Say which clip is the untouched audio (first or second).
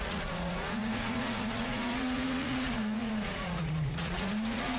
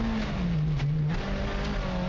second